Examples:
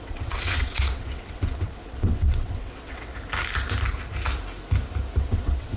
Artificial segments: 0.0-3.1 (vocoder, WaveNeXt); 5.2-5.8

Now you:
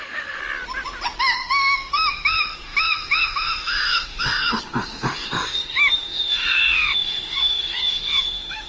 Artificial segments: 0.0-0.4 (autoencoder, DAC-VAE); 1.2-8.7